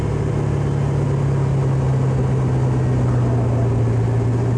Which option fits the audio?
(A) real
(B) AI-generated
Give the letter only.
A